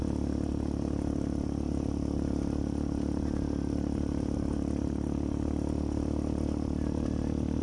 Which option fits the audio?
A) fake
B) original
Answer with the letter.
B